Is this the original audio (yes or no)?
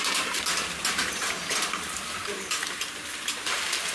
no